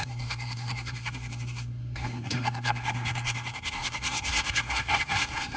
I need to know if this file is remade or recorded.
remade